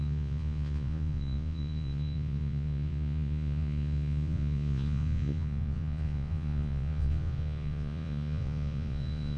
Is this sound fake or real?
fake